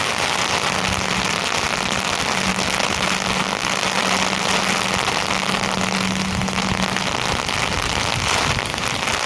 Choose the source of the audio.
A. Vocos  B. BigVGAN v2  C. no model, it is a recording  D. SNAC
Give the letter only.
C